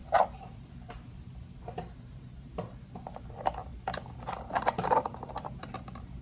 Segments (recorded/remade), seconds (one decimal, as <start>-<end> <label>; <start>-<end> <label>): 0.0-3.7 remade; 3.7-4.3 recorded; 4.3-6.2 remade

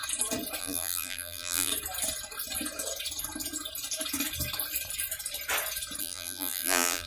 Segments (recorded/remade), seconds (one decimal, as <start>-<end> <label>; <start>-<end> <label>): 0.0-0.6 recorded; 0.6-1.7 remade; 1.7-6.0 recorded; 6.0-7.1 remade

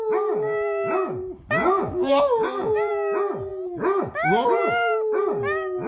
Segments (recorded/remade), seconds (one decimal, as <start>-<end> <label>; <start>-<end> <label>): 0.0-1.6 recorded; 1.6-2.9 remade; 2.9-5.9 recorded

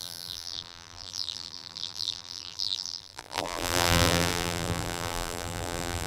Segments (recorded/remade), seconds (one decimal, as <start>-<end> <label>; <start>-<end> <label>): 0.0-6.1 remade

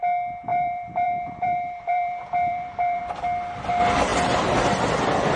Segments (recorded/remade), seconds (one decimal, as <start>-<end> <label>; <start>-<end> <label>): 0.0-0.5 recorded; 0.5-3.0 remade; 3.0-5.4 recorded

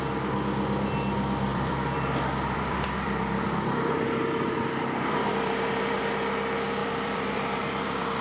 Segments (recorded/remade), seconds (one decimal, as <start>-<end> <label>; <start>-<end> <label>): 0.0-1.5 recorded; 1.5-6.0 remade; 6.0-6.8 recorded; 6.8-8.2 remade

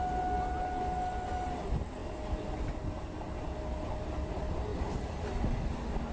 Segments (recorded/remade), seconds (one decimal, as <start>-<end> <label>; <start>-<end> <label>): 0.0-4.7 recorded; 4.7-5.2 remade; 5.2-6.1 recorded